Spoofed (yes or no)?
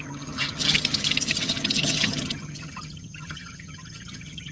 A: yes